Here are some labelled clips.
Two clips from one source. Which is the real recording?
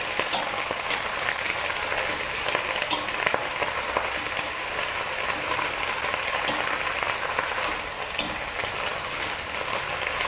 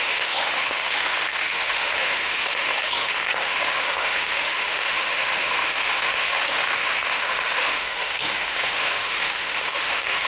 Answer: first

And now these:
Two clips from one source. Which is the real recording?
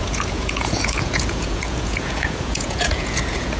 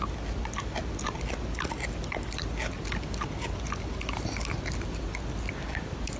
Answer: second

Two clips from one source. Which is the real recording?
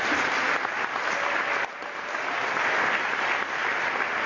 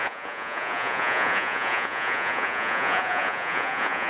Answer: first